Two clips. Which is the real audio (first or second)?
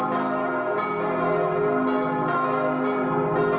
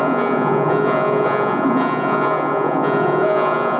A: first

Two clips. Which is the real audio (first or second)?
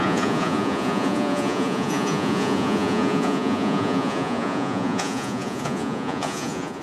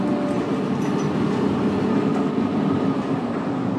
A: second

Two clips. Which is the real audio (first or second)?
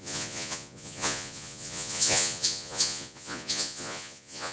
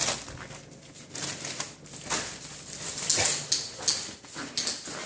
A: second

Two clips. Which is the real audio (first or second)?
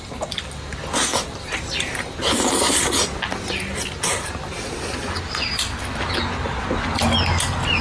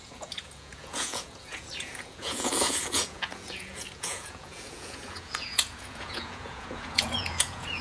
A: first